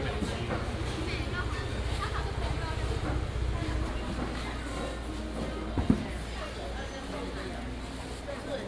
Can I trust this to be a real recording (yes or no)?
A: yes